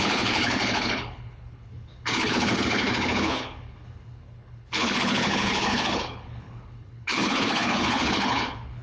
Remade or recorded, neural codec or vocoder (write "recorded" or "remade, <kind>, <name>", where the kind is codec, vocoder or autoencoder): remade, codec, HILCodec